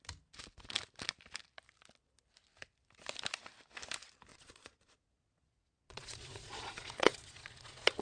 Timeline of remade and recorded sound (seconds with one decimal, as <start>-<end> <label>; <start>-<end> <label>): 0.0-4.3 recorded; 4.3-8.0 remade